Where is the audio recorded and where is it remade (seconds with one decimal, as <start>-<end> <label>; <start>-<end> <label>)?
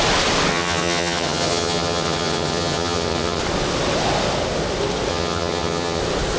0.0-0.5 recorded; 0.5-3.4 remade; 3.4-5.1 recorded; 5.1-6.0 remade; 6.0-6.4 recorded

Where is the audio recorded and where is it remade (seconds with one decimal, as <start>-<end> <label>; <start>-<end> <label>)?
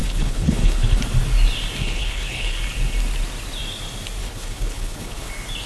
0.0-1.0 remade; 1.0-1.8 recorded; 1.8-2.6 remade; 2.6-4.2 recorded; 4.2-5.3 remade; 5.3-5.7 recorded